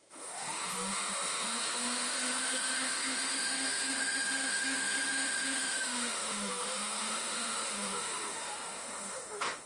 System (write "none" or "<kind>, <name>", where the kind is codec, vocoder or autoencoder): autoencoder, DAC-VAE